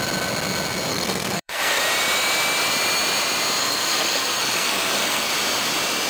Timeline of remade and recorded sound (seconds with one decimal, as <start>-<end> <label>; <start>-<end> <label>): 0.0-0.9 recorded; 0.9-1.8 remade; 1.8-3.6 recorded; 3.6-5.3 remade; 5.3-6.1 recorded